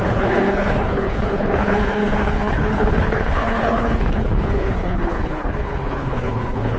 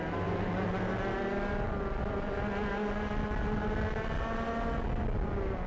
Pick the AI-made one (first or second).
first